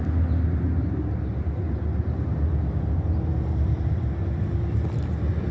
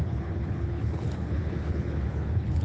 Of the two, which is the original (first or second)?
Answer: first